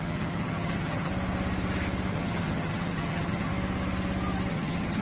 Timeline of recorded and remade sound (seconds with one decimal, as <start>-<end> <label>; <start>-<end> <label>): 0.0-1.1 remade; 1.1-2.1 recorded; 2.1-3.5 remade; 3.5-4.5 recorded; 4.5-5.0 remade